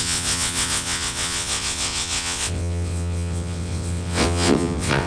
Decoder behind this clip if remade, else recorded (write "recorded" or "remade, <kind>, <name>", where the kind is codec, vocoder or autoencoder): remade, vocoder, WaveNeXt